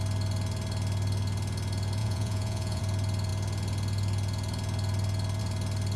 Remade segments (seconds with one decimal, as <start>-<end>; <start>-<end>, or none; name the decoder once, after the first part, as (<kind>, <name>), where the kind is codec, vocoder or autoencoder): 2.0-2.8 (vocoder, Vocos)